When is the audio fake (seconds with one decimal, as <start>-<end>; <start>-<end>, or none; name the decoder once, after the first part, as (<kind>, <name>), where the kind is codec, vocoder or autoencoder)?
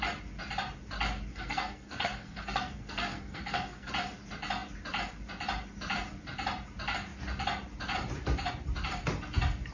1.3-3.9 (codec, SNAC)